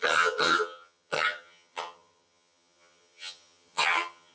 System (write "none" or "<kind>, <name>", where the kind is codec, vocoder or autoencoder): vocoder, HiFi-GAN